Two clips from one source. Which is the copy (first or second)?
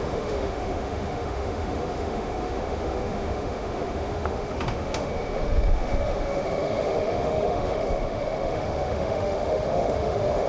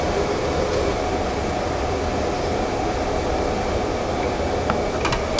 first